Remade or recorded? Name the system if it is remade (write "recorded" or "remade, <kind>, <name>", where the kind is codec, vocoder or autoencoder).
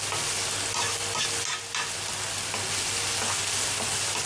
recorded